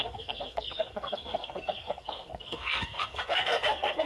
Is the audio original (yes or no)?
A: no